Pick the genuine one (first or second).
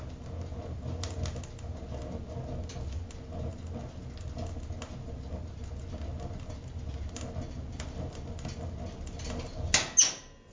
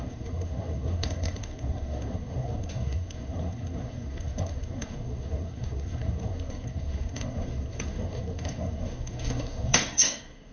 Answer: first